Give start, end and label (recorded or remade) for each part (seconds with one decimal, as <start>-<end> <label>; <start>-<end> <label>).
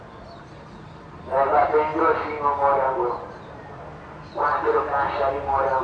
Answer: 0.0-5.8 recorded